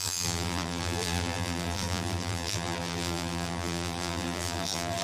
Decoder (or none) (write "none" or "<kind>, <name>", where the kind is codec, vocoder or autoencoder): vocoder, BigVGAN v2